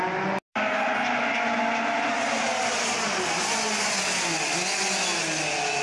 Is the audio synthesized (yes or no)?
no